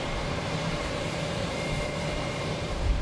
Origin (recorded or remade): remade